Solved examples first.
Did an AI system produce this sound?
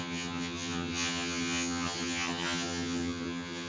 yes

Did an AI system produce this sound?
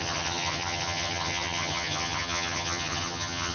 yes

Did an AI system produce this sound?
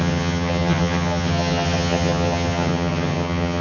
yes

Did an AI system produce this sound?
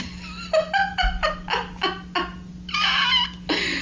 no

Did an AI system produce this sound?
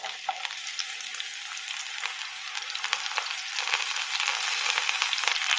no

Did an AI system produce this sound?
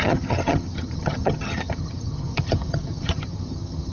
yes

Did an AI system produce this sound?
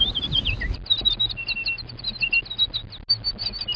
no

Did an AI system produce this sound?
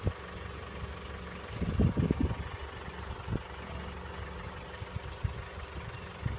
no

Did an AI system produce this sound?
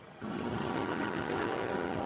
yes